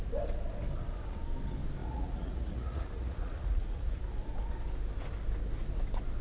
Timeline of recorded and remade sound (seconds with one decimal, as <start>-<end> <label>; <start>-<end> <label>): 0.0-1.8 recorded; 1.8-4.0 remade; 4.0-6.2 recorded